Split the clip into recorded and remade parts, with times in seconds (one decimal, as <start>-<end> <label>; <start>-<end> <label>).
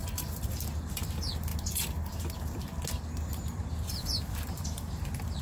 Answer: 0.0-1.5 remade; 1.5-3.3 recorded; 3.3-5.4 remade